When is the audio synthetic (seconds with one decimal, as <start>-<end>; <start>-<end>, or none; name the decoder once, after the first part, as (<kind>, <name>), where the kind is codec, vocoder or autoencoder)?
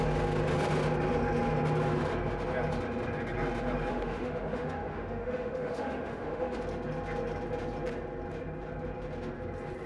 3.9-6.6 (autoencoder, DAC-VAE)